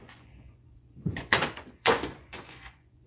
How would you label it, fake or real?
fake